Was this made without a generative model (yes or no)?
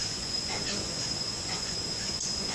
no